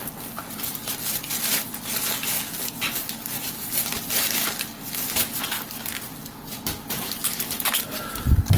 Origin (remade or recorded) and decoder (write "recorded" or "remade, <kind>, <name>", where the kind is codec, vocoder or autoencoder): recorded